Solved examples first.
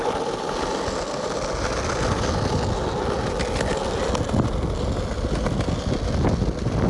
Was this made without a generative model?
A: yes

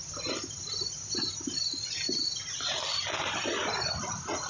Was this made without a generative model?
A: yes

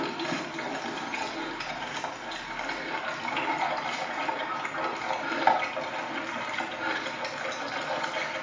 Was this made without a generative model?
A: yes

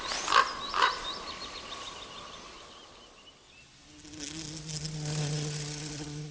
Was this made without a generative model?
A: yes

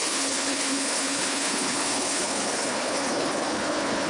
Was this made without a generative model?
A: no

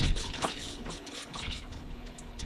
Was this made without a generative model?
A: no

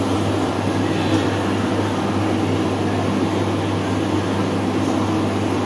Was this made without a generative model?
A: yes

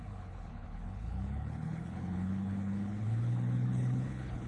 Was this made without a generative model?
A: no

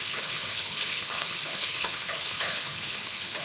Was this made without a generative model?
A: no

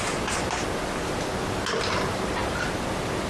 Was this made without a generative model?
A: yes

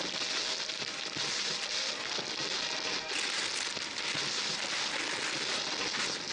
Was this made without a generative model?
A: yes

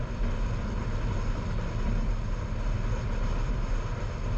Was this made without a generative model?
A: yes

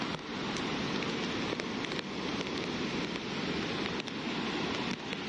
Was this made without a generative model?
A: yes